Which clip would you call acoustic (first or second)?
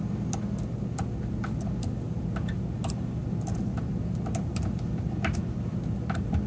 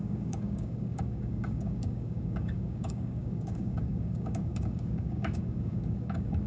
first